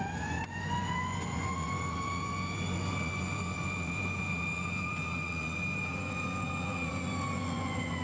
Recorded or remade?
remade